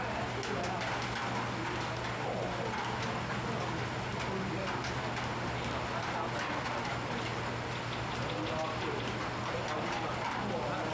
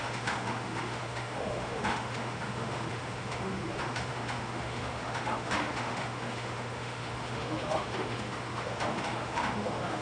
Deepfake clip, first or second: second